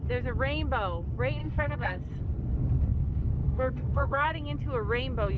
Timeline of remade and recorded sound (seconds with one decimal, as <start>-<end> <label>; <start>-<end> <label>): 0.0-1.4 recorded; 1.4-2.1 remade; 2.1-2.9 recorded; 2.9-4.3 remade; 4.3-5.4 recorded